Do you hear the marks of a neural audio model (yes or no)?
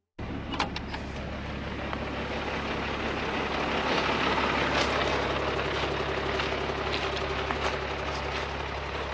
no